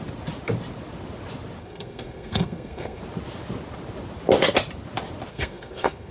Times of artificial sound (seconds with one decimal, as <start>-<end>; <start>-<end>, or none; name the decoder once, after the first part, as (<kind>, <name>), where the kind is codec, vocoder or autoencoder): 1.6-3.0 (codec, SNAC); 5.3-6.1